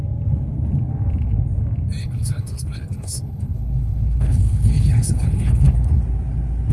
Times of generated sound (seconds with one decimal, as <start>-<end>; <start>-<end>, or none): 2.0-6.0